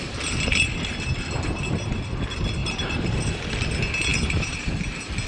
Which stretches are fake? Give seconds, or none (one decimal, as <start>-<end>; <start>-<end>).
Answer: 2.6-3.4; 4.1-4.7